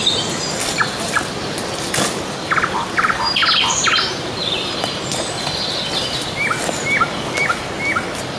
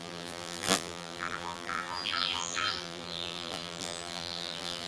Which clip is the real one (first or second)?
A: first